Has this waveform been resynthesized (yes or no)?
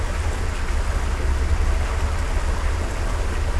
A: no